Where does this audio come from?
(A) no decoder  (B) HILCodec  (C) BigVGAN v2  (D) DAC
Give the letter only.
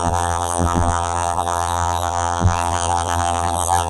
C